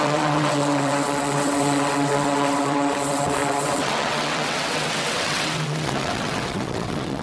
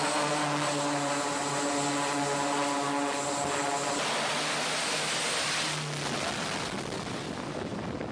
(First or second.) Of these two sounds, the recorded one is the second